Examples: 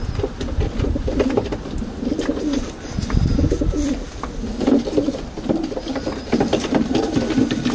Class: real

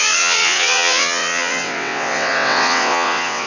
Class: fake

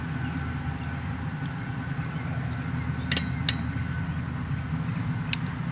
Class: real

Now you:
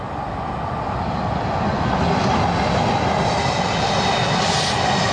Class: real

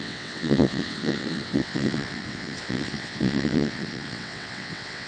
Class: fake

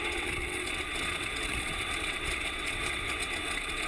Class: fake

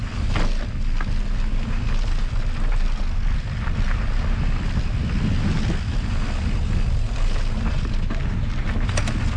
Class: real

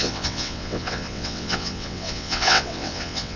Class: fake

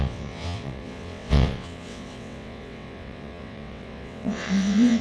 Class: fake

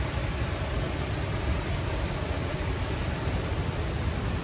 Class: real